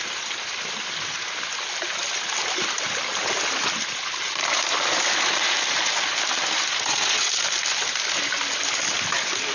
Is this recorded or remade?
recorded